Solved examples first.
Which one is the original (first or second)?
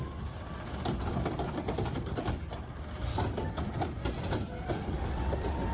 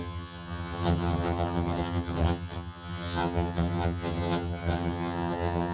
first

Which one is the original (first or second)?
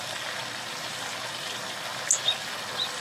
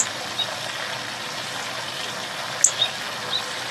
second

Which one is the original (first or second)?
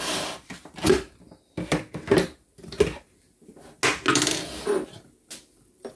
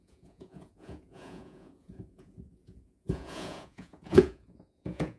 first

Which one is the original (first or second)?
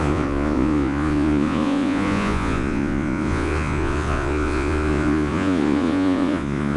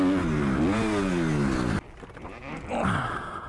second